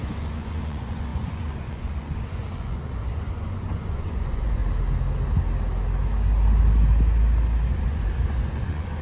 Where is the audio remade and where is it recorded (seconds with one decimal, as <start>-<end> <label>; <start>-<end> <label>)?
0.0-4.6 remade; 4.6-7.7 recorded; 7.7-9.0 remade